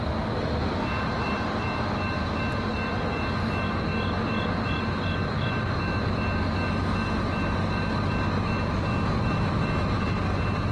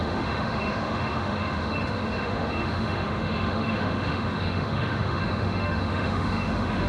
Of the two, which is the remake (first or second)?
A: second